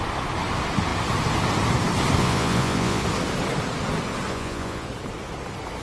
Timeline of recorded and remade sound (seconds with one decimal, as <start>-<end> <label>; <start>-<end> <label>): 0.0-2.2 recorded; 2.2-3.0 remade; 3.0-4.3 recorded; 4.3-4.9 remade; 4.9-5.8 recorded